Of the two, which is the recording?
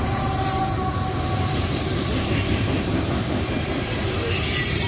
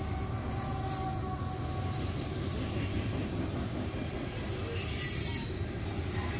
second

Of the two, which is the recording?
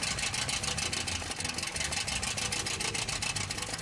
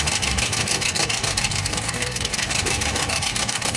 first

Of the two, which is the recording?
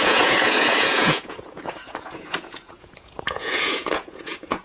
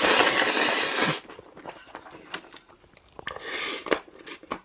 second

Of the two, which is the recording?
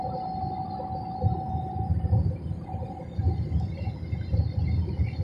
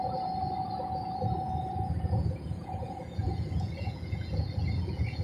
first